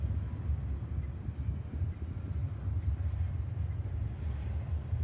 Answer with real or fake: real